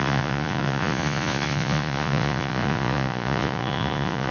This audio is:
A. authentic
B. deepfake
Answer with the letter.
B